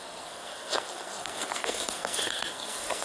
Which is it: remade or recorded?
remade